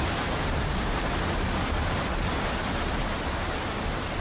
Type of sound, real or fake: real